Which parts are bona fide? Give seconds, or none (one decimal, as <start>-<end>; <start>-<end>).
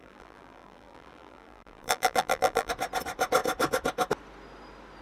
2.7-5.0